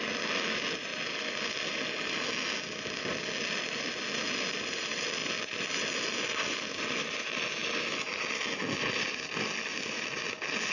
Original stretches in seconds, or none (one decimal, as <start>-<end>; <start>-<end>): 0.0-10.7